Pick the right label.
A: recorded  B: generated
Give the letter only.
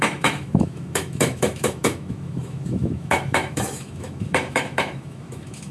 B